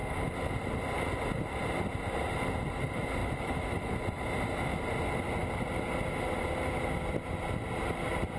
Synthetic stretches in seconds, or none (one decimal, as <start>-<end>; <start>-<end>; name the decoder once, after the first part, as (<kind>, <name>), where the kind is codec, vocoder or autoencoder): 3.2-3.9 (autoencoder, DAC-VAE)